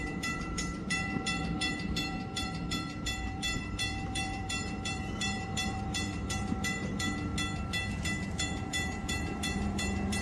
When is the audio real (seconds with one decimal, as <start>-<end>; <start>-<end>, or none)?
7.3-7.9